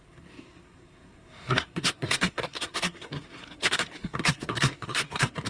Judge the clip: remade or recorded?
remade